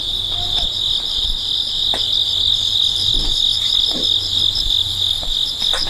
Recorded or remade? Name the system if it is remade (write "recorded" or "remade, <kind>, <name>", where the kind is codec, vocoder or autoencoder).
recorded